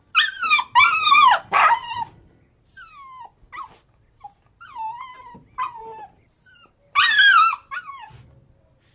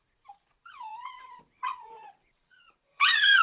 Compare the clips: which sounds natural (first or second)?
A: first